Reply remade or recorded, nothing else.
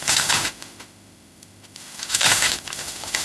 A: remade